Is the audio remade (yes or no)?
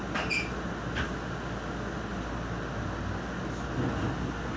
no